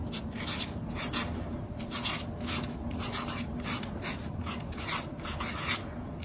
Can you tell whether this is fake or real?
real